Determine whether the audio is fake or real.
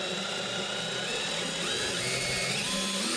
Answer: real